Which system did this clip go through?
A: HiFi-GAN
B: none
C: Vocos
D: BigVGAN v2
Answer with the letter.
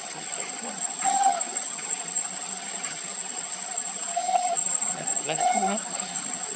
A